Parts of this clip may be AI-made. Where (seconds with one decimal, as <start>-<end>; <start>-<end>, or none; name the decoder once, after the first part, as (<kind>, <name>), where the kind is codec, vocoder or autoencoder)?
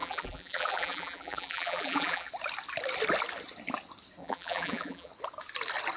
0.0-2.3 (vocoder, BigVGAN v2); 4.2-5.1